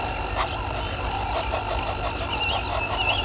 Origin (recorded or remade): recorded